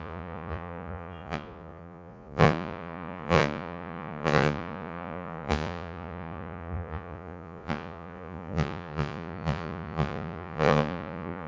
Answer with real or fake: fake